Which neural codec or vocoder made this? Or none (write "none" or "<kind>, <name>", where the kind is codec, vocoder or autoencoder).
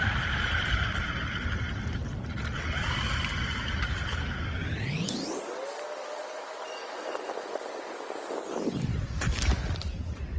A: none